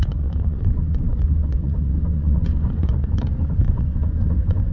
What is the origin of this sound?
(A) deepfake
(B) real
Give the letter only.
A